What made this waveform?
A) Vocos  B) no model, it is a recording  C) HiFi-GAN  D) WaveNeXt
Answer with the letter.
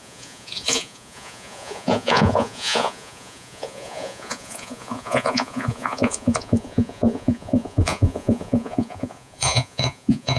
A